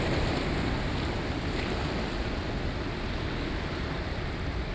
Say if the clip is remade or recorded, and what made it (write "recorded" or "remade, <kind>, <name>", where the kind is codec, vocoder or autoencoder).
recorded